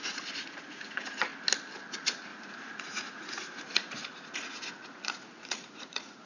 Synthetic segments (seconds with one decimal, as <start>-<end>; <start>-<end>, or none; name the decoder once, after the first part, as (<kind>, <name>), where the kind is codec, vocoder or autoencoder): 0.0-1.3 (vocoder, Vocos); 1.9-6.3